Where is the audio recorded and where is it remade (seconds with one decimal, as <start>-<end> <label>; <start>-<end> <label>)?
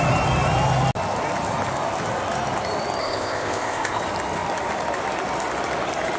0.0-3.0 recorded; 3.0-4.0 remade; 4.0-6.2 recorded